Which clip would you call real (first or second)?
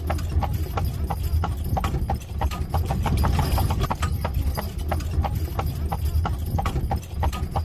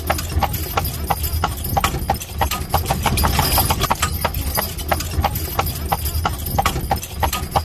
second